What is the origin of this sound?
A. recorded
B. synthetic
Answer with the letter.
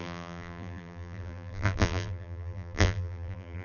B